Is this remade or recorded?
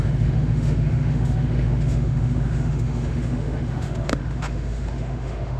remade